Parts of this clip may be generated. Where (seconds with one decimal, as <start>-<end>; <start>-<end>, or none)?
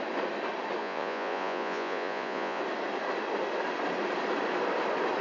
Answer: 0.8-2.6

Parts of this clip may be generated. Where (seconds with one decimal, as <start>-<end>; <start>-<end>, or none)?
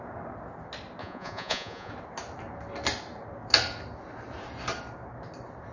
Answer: 1.0-1.9